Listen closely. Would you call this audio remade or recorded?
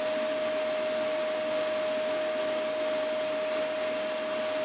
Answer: recorded